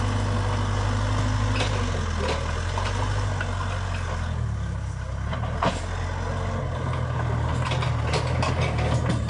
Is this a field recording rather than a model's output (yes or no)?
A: yes